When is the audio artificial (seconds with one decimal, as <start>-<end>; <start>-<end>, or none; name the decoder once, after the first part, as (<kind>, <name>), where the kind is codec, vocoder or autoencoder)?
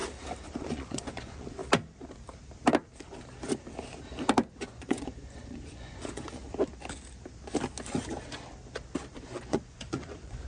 0.6-1.6 (vocoder, Vocos); 4.5-6.4; 9.1-10.5